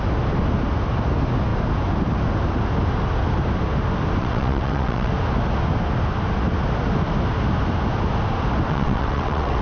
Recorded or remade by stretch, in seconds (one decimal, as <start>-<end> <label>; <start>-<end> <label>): 0.0-4.2 recorded; 4.2-5.1 remade; 5.1-8.7 recorded; 8.7-9.6 remade